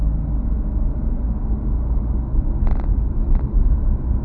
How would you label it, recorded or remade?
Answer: recorded